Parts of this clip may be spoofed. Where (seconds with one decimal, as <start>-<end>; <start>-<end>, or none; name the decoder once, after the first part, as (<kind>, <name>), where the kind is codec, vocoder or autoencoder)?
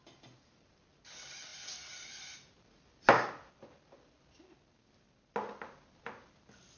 none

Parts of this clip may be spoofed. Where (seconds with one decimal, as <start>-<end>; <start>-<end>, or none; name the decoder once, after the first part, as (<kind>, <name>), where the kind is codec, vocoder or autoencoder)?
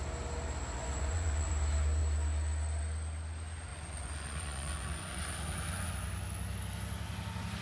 0.8-1.5 (vocoder, Vocos); 3.7-5.9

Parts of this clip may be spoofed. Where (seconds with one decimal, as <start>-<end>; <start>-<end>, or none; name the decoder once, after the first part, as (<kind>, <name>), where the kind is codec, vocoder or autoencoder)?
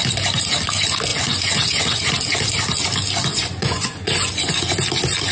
1.1-2.1 (vocoder, Vocos); 3.3-4.7